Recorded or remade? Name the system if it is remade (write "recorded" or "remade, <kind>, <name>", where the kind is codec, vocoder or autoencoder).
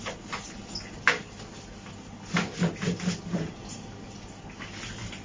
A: recorded